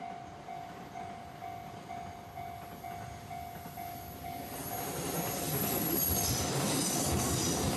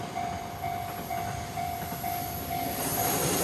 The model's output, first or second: second